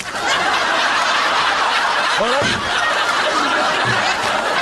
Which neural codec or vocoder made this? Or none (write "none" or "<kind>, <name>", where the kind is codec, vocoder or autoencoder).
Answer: none